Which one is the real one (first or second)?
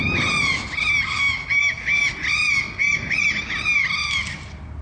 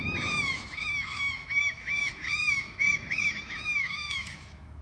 first